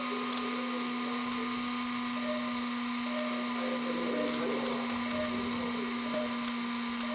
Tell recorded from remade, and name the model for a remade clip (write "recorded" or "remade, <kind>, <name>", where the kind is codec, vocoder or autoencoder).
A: recorded